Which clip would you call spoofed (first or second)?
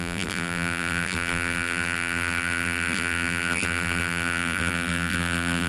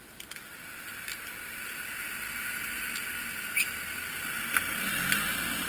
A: first